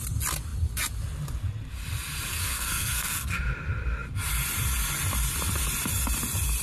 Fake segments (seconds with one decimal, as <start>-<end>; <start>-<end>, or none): 2.3-3.4